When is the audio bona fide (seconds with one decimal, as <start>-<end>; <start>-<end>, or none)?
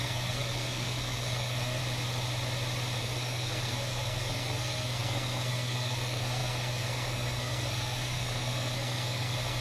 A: 1.8-3.0